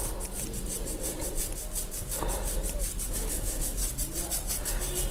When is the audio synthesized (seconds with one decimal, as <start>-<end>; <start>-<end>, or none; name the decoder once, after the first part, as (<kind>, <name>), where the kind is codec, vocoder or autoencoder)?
3.1-3.8 (autoencoder, DAC-VAE)